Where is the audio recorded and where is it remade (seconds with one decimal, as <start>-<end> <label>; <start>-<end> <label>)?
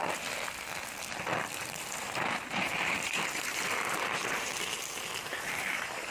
0.0-1.6 recorded; 1.6-4.5 remade; 4.5-5.3 recorded; 5.3-6.1 remade